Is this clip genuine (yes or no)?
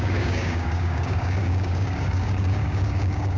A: no